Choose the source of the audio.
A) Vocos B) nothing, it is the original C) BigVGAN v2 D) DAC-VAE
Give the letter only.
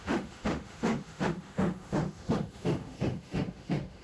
D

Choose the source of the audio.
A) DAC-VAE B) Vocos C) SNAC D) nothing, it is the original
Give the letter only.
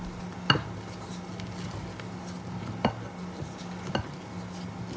D